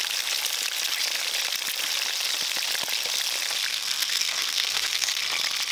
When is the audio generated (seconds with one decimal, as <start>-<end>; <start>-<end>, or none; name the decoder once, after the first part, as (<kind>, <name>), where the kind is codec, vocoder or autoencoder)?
3.7-5.2 (codec, SNAC)

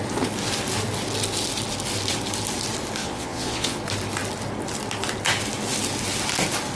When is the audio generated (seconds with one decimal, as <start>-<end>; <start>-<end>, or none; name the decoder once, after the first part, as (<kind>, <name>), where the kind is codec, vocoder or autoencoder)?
3.0-3.8 (vocoder, Vocos)

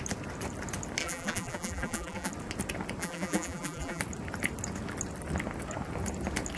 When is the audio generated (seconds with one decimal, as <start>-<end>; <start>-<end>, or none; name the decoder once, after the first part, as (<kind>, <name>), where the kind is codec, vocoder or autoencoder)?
1.0-2.3 (vocoder, BigVGAN v2); 3.0-4.0

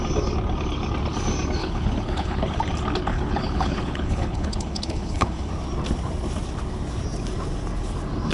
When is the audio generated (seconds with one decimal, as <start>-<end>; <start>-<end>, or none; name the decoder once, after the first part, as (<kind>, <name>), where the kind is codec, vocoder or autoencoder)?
1.6-2.6 (codec, HILCodec); 3.1-5.5

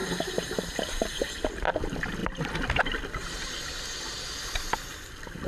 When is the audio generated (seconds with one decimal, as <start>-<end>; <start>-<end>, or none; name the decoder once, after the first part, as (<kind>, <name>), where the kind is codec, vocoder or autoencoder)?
0.0-1.2 (vocoder, BigVGAN v2)

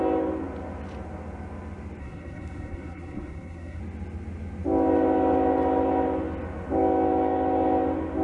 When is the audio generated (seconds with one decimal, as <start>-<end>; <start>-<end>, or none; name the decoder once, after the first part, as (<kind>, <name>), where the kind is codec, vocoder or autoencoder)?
2.0-3.8 (codec, SNAC)